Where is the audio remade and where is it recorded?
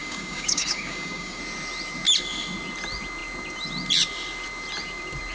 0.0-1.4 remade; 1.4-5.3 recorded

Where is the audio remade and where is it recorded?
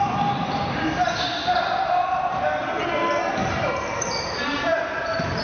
0.0-3.4 recorded; 3.4-5.4 remade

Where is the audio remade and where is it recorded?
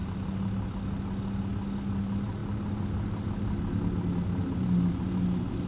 0.0-5.7 recorded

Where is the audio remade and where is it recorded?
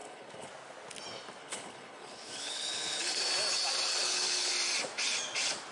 0.0-0.5 remade; 0.5-1.4 recorded; 1.4-3.2 remade; 3.2-3.9 recorded; 3.9-4.5 remade; 4.5-5.7 recorded